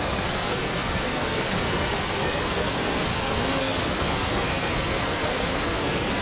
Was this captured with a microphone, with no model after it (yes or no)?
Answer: no